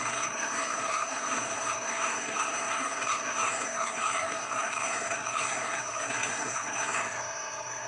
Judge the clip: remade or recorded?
remade